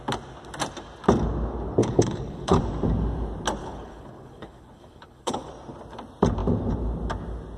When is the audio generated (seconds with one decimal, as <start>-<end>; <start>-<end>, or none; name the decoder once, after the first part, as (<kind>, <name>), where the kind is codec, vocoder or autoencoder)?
1.8-2.6 (codec, HILCodec); 3.6-5.5